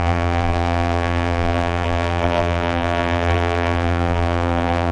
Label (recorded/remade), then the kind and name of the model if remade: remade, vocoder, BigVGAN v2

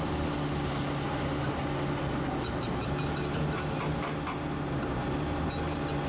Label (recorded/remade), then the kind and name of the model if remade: recorded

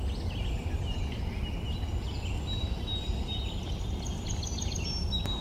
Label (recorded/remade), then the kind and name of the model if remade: recorded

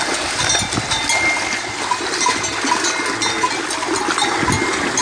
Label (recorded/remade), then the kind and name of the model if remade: recorded